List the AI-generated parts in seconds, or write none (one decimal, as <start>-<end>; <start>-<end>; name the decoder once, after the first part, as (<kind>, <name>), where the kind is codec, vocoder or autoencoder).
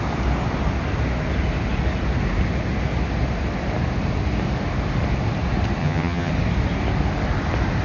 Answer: 5.8-6.3 (vocoder, HiFi-GAN)